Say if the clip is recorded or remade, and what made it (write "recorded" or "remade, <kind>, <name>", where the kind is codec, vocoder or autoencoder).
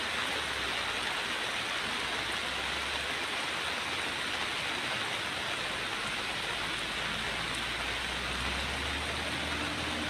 recorded